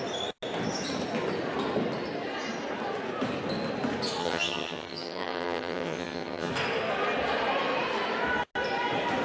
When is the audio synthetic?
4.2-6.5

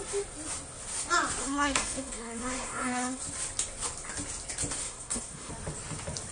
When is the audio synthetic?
1.4-3.2; 4.8-5.5